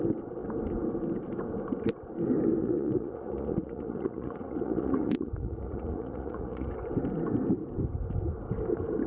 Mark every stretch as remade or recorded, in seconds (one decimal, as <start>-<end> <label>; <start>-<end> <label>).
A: 0.0-2.6 recorded; 2.6-6.7 remade; 6.7-9.1 recorded